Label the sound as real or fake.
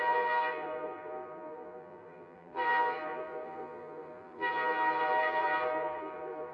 fake